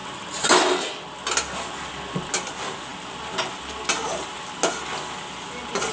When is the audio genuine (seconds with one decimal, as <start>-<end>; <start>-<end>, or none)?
0.0-5.9